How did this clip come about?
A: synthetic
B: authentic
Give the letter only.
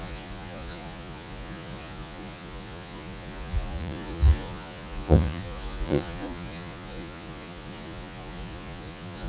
A